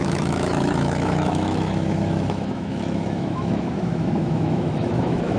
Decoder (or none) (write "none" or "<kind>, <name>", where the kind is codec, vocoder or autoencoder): autoencoder, DAC-VAE